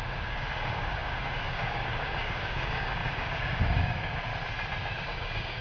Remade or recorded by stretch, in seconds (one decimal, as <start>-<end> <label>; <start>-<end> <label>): 0.0-4.3 remade; 4.3-5.0 recorded; 5.0-5.6 remade